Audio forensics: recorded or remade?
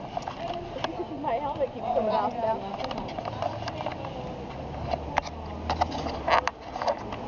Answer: recorded